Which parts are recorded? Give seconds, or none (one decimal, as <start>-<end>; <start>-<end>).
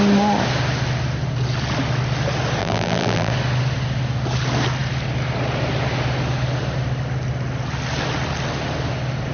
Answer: 0.0-2.6; 3.3-9.3